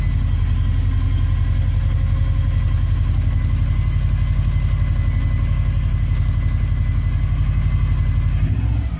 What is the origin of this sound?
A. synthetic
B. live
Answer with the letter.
B